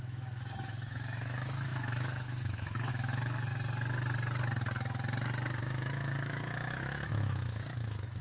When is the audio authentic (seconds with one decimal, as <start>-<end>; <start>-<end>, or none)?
3.5-5.6